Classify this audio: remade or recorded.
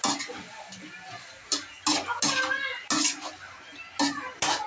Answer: recorded